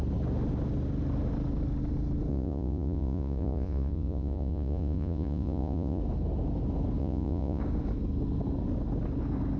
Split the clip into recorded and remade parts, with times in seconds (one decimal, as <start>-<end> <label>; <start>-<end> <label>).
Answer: 0.0-2.3 recorded; 2.3-6.0 remade; 6.0-7.0 recorded; 7.0-7.6 remade; 7.6-9.6 recorded